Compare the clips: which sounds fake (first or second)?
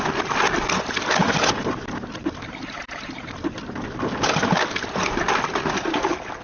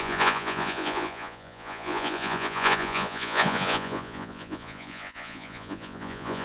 second